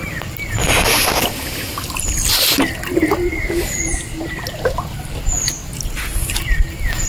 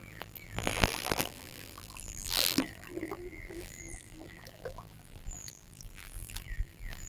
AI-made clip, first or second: second